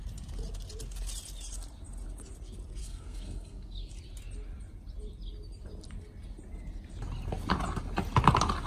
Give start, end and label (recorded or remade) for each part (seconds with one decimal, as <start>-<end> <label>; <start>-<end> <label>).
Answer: 0.0-2.8 recorded; 2.8-3.9 remade; 3.9-8.7 recorded